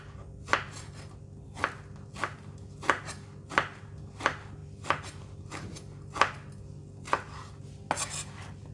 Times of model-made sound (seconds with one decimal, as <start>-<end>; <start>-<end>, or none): none